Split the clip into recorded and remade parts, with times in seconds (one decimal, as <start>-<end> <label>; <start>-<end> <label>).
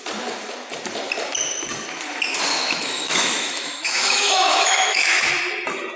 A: 0.0-2.5 recorded; 2.5-5.3 remade; 5.3-6.0 recorded